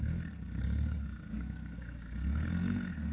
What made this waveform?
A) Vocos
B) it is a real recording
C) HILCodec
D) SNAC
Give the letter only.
D